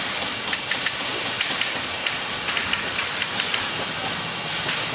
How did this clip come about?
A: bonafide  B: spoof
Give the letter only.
A